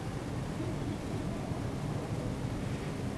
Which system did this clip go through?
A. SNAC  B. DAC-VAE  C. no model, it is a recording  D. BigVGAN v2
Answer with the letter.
D